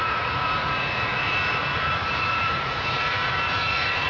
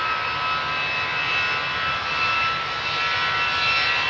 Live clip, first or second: second